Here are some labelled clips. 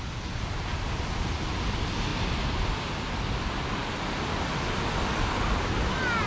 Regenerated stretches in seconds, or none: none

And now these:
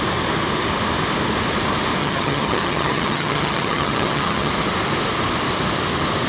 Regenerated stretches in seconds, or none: 2.0-4.5 (vocoder, HiFi-GAN)

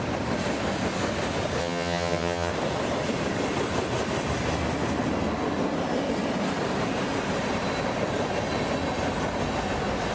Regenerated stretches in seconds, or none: 1.6-2.5 (vocoder, HiFi-GAN)

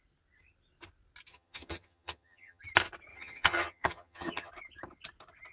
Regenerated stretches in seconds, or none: 1.3-2.6 (vocoder, HiFi-GAN); 3.1-4.5

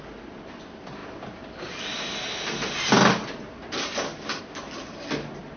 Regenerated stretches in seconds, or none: none

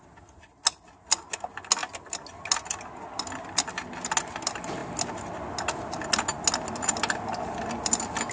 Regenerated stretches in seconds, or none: none

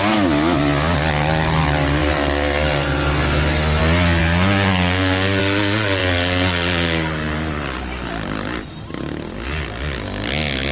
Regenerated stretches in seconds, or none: none